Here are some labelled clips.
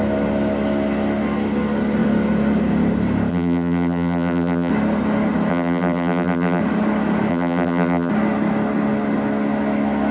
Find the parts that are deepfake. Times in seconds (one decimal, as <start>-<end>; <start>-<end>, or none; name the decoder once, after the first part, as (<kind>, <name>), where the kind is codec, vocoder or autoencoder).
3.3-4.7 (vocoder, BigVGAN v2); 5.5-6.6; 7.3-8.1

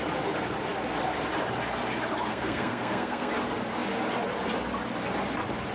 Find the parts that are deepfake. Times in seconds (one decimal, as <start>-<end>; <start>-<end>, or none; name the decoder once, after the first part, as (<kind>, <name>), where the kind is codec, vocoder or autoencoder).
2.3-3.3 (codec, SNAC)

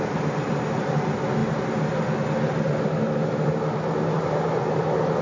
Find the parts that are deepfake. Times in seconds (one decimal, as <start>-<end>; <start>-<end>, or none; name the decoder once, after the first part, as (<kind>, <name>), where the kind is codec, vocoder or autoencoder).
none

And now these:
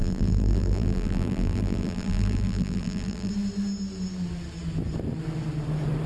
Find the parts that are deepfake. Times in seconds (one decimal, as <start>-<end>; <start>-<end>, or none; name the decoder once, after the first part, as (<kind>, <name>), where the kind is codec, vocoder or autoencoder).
0.0-3.3 (vocoder, BigVGAN v2)

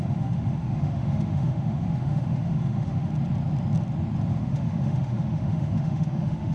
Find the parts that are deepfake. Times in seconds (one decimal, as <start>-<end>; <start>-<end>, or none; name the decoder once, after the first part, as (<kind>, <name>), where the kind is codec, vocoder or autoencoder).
0.0-3.1 (autoencoder, DAC-VAE); 4.3-6.5

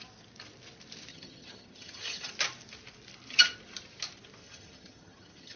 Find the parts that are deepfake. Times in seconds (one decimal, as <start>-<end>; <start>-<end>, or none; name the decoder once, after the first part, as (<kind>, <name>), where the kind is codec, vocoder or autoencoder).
1.1-2.3 (vocoder, HiFi-GAN); 4.4-5.6

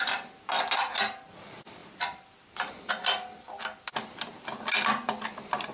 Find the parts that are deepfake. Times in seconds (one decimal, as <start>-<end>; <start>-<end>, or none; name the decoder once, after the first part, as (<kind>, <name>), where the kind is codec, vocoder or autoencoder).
none